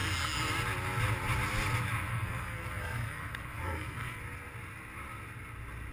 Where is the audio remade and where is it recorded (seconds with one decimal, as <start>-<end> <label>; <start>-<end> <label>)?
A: 0.0-2.1 recorded; 2.1-4.2 remade; 4.2-5.9 recorded